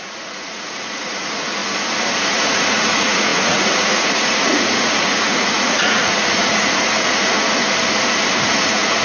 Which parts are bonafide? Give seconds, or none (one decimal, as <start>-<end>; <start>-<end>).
1.6-2.3; 7.6-8.4